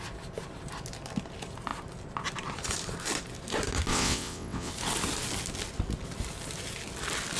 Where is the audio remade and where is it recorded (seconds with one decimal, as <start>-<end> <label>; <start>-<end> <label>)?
0.0-3.9 recorded; 3.9-4.7 remade; 4.7-7.4 recorded